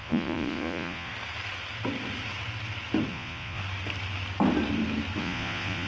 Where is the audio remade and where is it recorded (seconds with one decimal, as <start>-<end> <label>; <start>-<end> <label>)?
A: 0.0-1.1 remade; 1.1-3.1 recorded; 3.1-3.6 remade; 3.6-5.2 recorded; 5.2-5.9 remade